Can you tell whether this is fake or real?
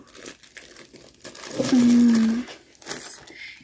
real